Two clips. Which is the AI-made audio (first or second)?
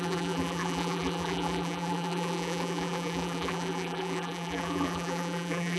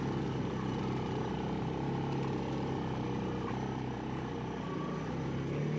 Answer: first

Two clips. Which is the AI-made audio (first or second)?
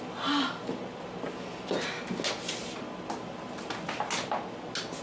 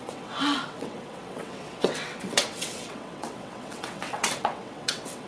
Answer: second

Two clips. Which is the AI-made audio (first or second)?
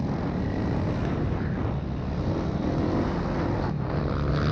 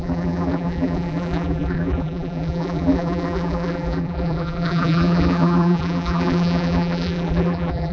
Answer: second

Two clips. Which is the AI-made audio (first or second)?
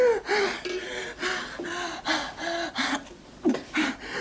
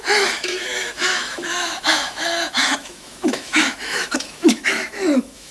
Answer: second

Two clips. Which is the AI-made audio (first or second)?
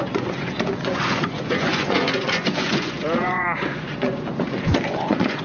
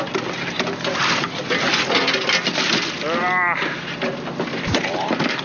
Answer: first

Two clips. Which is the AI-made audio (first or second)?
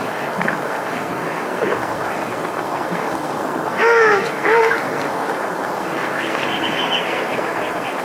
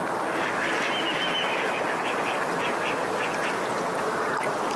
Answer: first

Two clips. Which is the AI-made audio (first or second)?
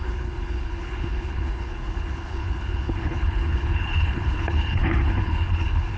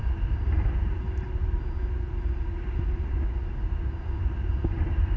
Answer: first